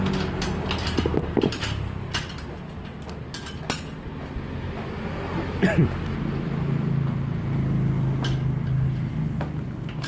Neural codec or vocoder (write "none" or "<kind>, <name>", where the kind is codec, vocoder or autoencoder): none